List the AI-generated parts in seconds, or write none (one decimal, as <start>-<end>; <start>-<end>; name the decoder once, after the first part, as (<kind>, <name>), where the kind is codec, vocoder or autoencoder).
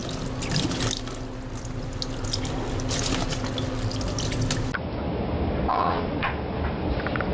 5.7-6.3 (vocoder, Vocos)